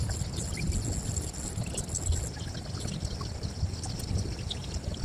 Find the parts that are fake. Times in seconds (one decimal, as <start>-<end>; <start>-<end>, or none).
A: none

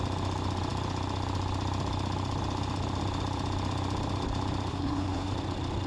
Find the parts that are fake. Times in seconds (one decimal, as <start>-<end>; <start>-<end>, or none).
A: 4.7-5.3

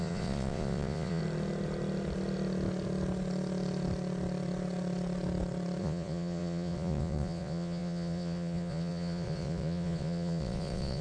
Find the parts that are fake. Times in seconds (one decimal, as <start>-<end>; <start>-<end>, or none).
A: 0.0-1.2; 5.8-11.0

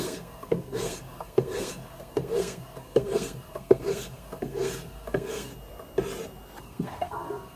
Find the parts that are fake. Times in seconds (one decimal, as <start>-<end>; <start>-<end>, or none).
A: 0.0-5.5; 6.6-7.6

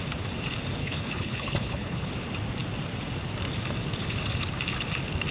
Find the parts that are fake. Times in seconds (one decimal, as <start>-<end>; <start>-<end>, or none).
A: 0.8-2.1